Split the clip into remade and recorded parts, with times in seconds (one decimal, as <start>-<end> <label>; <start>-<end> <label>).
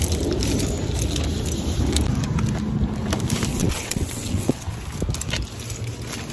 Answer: 0.0-3.6 recorded; 3.6-4.7 remade; 4.7-6.3 recorded